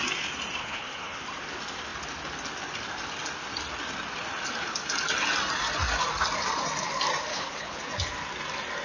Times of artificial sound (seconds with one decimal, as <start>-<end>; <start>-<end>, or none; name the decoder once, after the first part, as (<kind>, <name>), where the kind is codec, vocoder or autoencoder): 0.6-1.2 (codec, HILCodec); 7.3-7.8